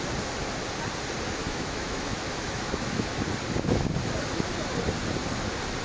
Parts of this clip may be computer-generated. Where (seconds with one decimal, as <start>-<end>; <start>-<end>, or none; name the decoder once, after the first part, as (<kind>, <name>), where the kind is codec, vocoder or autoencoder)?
1.4-3.2 (autoencoder, DAC-VAE)